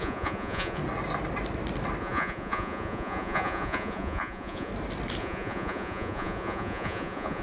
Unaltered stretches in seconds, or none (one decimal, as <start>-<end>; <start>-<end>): 0.8-2.0; 4.7-5.2